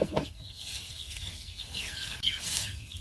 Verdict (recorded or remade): remade